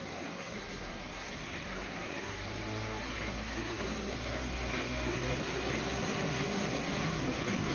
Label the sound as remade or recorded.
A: remade